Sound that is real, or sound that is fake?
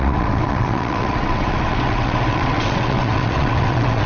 fake